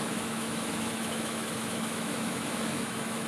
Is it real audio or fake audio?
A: fake